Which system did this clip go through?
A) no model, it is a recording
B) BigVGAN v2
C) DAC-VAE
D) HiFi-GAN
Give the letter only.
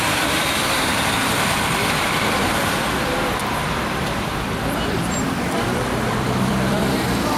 B